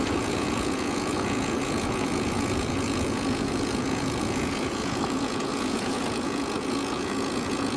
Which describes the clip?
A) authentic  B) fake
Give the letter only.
B